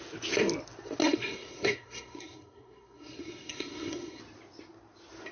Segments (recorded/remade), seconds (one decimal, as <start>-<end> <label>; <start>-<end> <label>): 0.0-1.0 recorded; 1.0-4.2 remade; 4.2-5.3 recorded